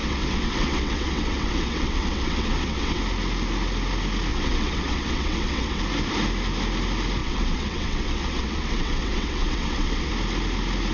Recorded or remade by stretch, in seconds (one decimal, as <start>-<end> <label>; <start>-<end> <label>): 0.0-3.0 remade; 3.0-4.3 recorded; 4.3-5.8 remade; 5.8-7.2 recorded; 7.2-10.1 remade; 10.1-10.9 recorded